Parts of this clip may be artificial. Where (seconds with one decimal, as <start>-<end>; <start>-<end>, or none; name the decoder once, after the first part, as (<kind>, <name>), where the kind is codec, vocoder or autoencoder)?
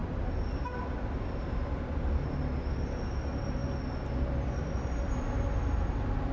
none